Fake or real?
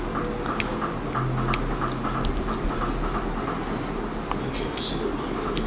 real